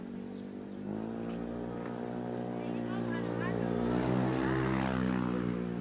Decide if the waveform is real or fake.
real